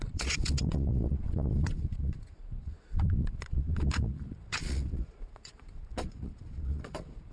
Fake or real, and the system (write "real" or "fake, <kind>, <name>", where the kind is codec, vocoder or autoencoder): fake, vocoder, Vocos